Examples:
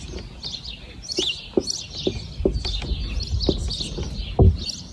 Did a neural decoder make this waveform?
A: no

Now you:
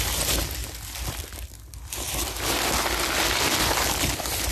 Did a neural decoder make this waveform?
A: no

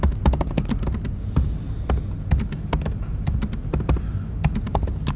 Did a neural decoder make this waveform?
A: no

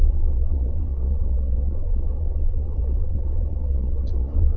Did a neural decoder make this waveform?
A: yes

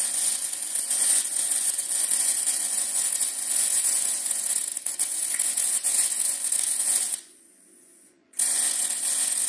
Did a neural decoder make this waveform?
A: yes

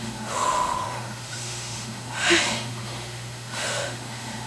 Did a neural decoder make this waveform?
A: yes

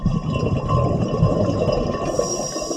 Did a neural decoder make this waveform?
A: no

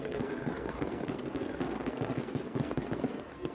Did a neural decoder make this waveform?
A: yes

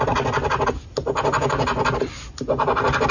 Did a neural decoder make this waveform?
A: no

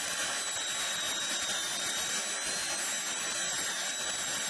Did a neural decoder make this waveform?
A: no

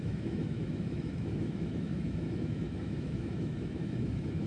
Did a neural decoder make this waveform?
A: yes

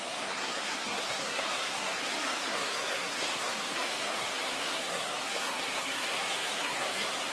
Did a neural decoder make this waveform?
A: yes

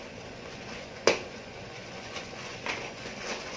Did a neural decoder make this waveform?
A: yes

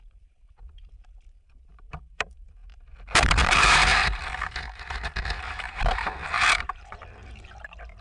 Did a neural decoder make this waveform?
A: yes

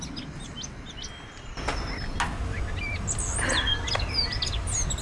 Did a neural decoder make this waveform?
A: no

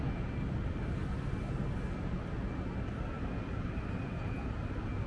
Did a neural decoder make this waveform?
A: no